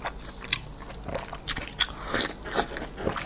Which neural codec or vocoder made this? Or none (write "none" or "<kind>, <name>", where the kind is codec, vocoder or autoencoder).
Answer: none